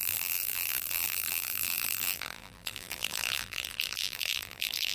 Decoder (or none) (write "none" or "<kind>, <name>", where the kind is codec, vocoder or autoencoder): vocoder, BigVGAN v2